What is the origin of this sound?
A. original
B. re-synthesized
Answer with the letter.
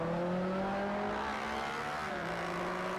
A